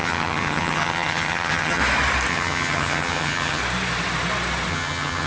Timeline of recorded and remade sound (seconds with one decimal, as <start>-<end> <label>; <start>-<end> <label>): 0.0-1.8 remade; 1.8-2.3 recorded; 2.3-3.6 remade; 3.6-4.7 recorded; 4.7-5.3 remade